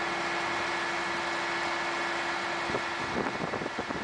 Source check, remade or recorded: recorded